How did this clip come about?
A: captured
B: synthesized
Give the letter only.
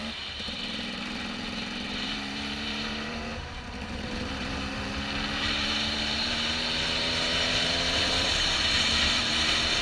B